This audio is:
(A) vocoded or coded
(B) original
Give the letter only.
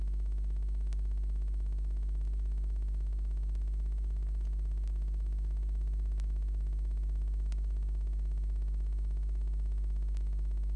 B